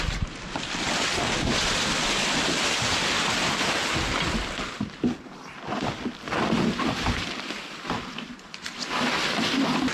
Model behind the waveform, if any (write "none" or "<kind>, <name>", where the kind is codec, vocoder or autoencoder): vocoder, BigVGAN v2